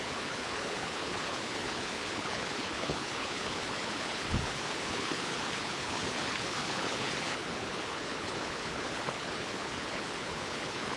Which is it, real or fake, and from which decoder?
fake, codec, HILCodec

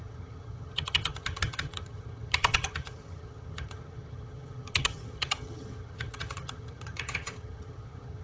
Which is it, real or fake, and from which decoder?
fake, vocoder, HiFi-GAN